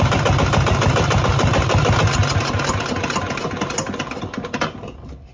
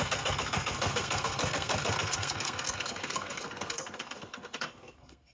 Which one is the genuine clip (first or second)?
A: first